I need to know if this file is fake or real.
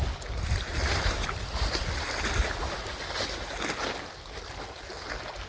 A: real